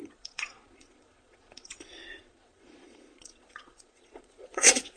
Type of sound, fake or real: fake